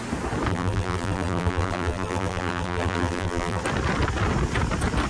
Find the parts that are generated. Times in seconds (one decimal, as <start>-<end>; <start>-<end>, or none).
0.5-3.6